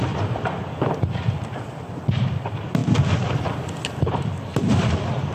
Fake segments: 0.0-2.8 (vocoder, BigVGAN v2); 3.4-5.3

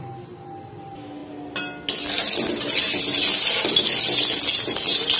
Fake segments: 4.5-5.2 (vocoder, BigVGAN v2)

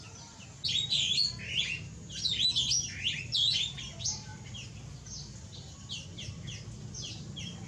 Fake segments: none

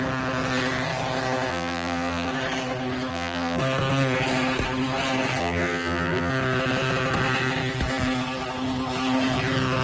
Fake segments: 1.5-2.3 (vocoder, BigVGAN v2); 3.1-3.6; 5.4-6.3